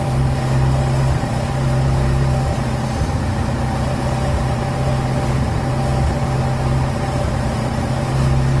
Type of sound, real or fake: fake